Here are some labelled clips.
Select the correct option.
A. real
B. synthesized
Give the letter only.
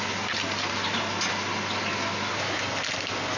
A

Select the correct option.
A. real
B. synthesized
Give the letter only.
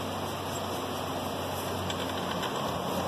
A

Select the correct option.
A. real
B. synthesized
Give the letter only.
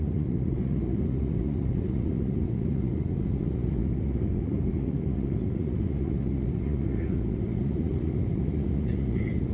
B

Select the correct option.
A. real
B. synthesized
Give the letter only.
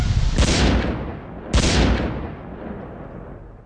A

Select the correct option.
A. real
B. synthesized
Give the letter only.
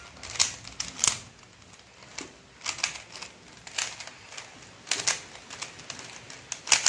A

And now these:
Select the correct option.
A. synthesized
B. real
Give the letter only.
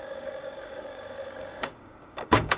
A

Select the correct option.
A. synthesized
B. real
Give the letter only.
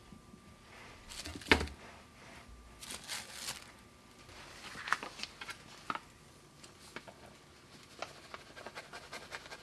B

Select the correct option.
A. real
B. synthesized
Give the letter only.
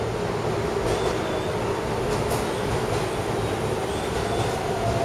A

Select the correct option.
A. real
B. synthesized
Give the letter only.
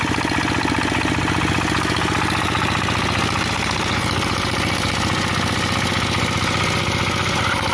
A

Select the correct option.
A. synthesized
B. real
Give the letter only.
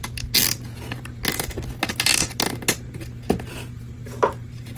B